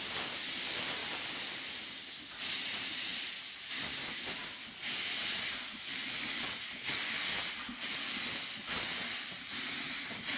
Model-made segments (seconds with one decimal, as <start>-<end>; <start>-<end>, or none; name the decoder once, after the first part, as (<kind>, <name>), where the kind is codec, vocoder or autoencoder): none